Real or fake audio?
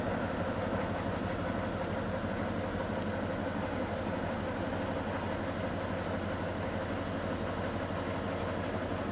real